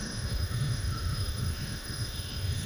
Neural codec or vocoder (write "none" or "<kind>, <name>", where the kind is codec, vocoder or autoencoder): autoencoder, DAC-VAE